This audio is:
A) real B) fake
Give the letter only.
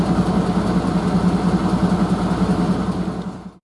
A